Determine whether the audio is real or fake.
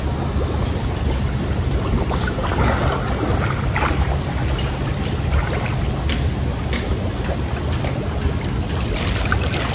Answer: real